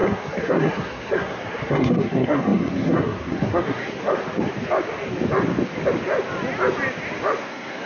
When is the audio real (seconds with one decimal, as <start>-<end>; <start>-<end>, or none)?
4.2-7.4